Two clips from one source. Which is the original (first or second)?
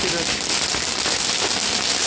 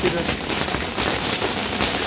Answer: first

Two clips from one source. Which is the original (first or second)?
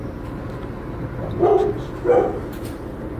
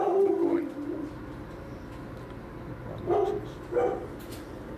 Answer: second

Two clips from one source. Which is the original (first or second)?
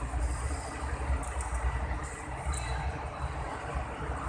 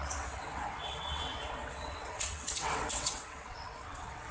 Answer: first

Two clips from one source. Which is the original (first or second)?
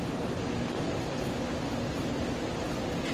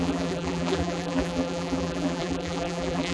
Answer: first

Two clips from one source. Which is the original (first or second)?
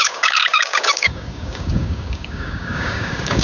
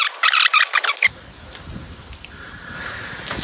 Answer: second